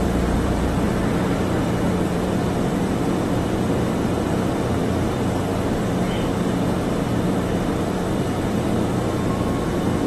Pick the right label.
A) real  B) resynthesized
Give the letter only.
B